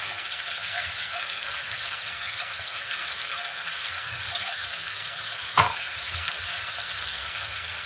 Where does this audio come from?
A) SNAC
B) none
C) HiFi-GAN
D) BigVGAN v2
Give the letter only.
A